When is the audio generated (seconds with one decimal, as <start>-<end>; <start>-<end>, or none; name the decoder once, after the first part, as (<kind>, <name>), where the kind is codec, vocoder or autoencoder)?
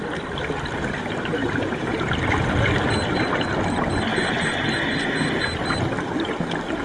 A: 1.4-2.1 (vocoder, Vocos)